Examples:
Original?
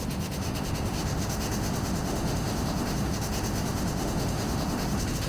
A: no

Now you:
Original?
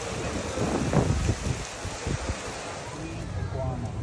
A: yes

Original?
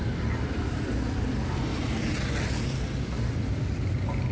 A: yes